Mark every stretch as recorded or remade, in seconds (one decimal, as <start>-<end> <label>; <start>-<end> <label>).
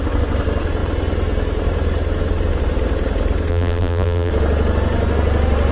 0.0-3.5 recorded; 3.5-4.3 remade; 4.3-5.7 recorded